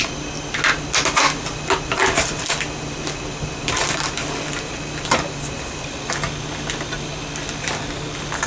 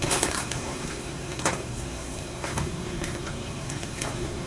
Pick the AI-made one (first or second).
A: second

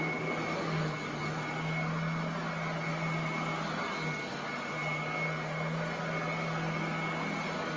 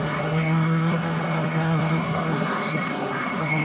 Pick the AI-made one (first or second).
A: second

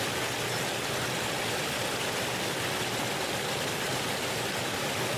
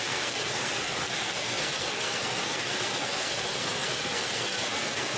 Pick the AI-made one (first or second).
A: second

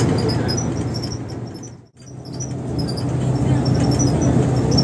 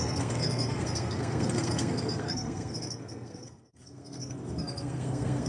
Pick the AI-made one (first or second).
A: second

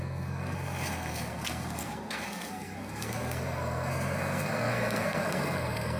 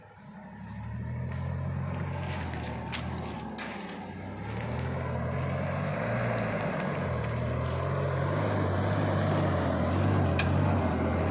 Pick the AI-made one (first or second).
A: first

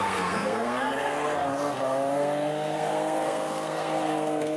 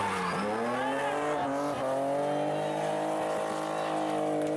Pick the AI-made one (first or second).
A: first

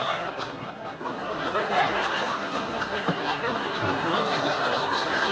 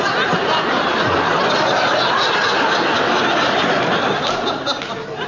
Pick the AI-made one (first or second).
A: first